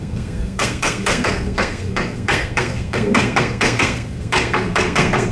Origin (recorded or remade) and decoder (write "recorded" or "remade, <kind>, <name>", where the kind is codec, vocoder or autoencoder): remade, codec, SNAC